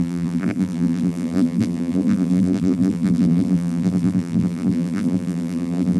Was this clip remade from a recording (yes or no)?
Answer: yes